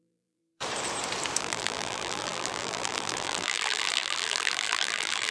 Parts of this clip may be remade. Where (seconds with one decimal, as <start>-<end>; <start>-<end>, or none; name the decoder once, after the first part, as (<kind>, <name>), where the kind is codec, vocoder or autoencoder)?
0.0-0.4 (vocoder, BigVGAN v2); 1.4-5.3